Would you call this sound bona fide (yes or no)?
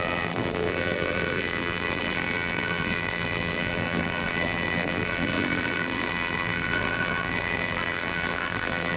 no